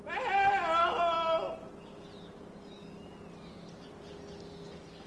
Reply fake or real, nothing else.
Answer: real